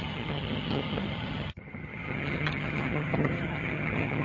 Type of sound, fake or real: fake